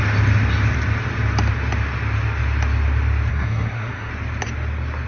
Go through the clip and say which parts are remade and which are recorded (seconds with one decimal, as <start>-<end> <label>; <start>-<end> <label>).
0.0-3.3 recorded; 3.3-4.1 remade; 4.1-5.1 recorded